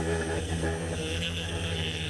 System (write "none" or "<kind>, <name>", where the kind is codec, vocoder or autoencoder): codec, SNAC